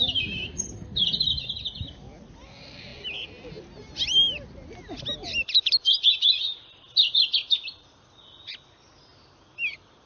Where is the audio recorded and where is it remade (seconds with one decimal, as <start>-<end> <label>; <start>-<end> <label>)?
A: 0.0-10.1 recorded